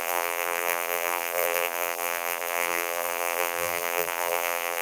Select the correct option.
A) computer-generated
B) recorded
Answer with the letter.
A